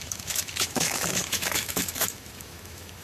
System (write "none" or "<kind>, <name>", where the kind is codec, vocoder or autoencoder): autoencoder, DAC-VAE